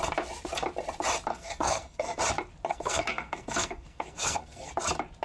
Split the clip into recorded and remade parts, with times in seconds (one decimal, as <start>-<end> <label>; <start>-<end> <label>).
0.0-1.3 recorded; 1.3-2.2 remade; 2.2-2.7 recorded; 2.7-4.7 remade; 4.7-5.2 recorded